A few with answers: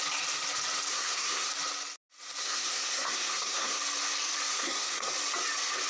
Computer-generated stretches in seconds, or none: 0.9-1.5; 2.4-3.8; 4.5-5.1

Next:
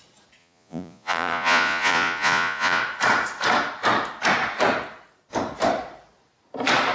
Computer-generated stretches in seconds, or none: 0.4-2.8

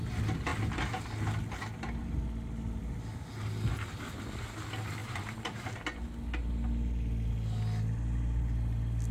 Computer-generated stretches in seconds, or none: 5.0-5.7

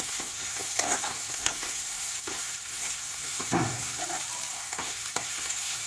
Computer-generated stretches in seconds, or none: 0.0-4.0; 4.5-5.9

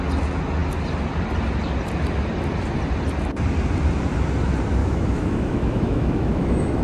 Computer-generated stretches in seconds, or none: 4.8-6.8

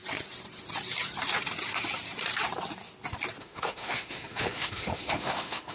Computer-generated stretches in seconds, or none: 3.4-5.7

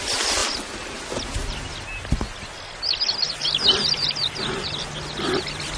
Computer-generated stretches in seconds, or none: none

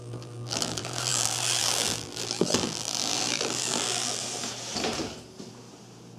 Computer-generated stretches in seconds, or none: 0.0-4.2